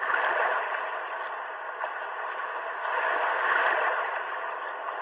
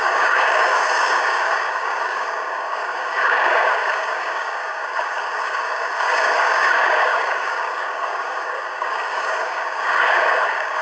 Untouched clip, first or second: first